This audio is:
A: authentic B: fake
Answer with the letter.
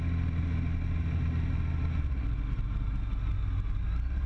A